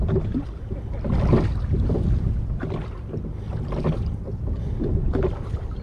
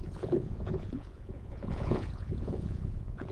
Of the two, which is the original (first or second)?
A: first